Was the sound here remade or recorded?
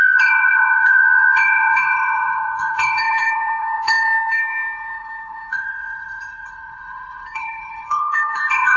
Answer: remade